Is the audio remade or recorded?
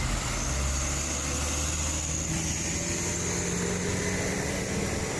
recorded